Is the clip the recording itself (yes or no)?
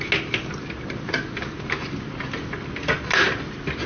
yes